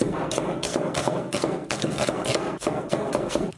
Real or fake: fake